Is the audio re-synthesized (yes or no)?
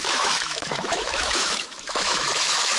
yes